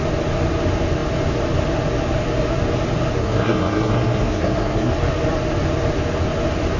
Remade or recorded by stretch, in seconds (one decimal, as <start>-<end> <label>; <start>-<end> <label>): 0.0-3.2 recorded; 3.2-4.9 remade; 4.9-6.8 recorded